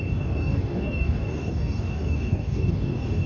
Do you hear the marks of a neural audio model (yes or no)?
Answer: yes